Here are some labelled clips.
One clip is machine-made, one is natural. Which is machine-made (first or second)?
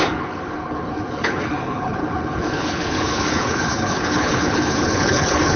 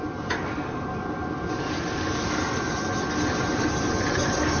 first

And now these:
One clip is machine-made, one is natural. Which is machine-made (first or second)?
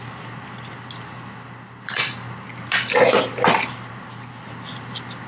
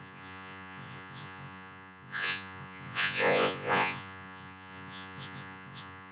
second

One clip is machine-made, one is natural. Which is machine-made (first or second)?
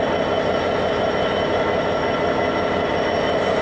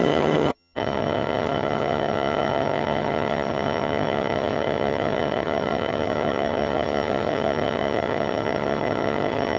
second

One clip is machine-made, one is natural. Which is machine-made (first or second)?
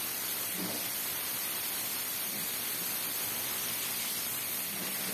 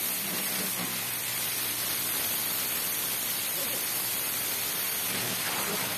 first